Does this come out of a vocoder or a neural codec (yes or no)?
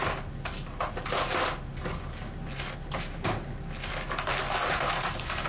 no